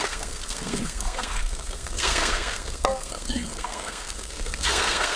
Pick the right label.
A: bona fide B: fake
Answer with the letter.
B